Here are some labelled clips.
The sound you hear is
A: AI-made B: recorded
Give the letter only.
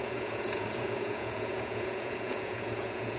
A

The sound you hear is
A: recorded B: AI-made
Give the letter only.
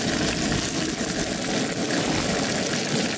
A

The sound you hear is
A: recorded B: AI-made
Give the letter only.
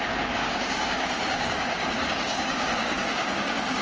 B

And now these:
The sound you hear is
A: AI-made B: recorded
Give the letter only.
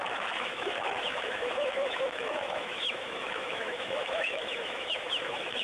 A